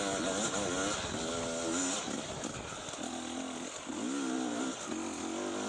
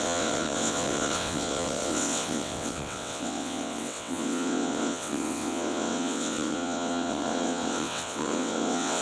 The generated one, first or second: second